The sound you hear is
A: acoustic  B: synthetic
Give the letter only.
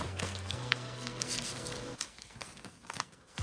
B